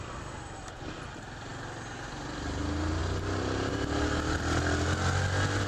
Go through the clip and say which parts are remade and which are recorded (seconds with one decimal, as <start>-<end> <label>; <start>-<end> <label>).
0.0-5.7 recorded